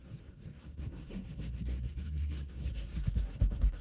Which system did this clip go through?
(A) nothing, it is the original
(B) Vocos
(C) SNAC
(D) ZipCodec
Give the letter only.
C